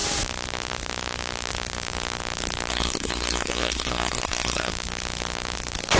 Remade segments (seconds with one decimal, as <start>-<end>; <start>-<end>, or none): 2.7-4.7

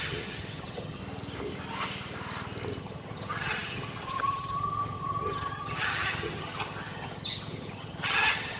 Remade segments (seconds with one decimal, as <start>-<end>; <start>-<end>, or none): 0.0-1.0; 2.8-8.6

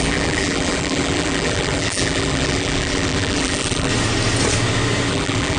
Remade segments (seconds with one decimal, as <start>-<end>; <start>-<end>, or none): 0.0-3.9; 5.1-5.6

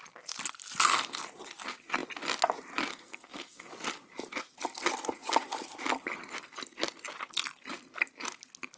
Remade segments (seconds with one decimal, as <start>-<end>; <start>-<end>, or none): 2.9-3.7

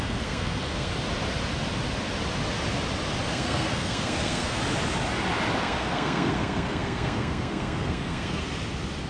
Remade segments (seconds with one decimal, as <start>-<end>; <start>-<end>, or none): 0.0-0.9; 3.3-4.6; 5.6-8.4

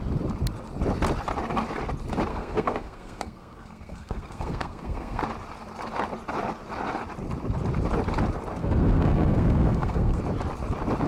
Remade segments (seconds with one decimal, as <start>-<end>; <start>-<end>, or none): 2.3-5.2; 8.6-10.2

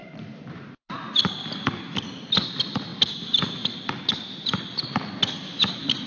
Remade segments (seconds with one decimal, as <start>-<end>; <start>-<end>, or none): 0.0-1.0